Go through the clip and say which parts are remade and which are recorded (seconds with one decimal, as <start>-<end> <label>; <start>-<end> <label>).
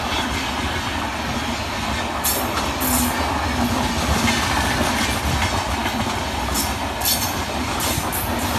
0.0-8.6 recorded